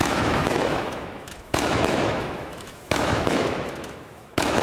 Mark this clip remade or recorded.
remade